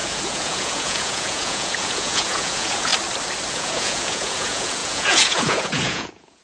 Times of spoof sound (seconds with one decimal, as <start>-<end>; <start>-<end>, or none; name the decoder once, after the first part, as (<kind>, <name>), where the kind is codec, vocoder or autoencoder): 0.0-2.9 (vocoder, Vocos); 3.5-6.4